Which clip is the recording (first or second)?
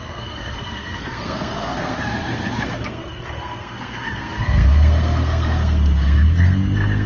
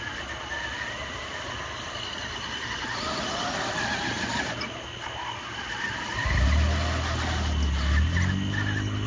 second